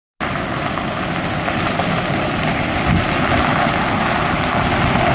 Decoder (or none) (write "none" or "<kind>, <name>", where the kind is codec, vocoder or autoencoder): none